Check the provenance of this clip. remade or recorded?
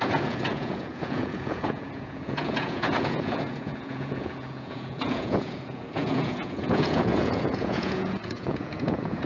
remade